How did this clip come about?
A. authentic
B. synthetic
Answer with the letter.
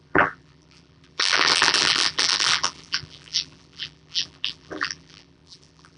B